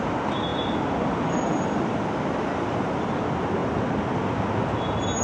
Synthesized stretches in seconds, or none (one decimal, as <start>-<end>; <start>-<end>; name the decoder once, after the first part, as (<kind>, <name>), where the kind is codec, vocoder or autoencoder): none